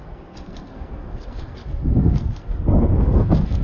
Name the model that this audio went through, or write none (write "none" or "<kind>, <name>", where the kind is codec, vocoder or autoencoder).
codec, SNAC